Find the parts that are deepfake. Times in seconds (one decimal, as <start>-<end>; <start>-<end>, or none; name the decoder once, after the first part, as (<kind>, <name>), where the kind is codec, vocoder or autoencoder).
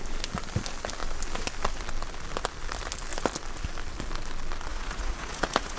4.7-5.8 (vocoder, Vocos)